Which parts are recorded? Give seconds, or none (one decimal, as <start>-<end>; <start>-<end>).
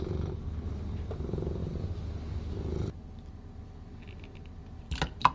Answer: 0.0-5.3